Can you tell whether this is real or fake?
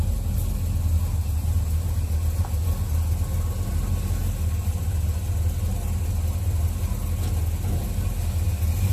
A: real